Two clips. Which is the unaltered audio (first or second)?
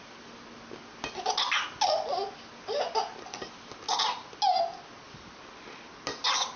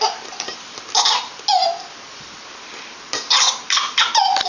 first